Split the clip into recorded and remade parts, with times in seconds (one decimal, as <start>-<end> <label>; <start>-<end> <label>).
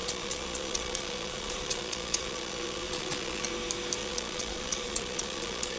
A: 0.0-3.5 remade; 3.5-4.0 recorded; 4.0-5.8 remade